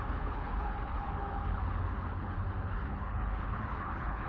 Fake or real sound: fake